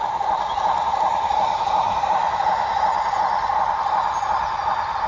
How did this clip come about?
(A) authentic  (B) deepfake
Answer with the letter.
A